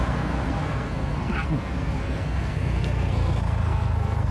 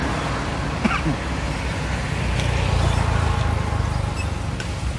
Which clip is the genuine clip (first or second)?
second